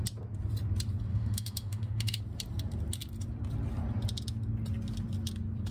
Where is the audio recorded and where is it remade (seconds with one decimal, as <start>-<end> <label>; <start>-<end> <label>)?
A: 0.0-1.1 recorded; 1.1-2.2 remade; 2.2-5.7 recorded